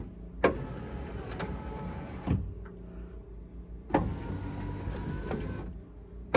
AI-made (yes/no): no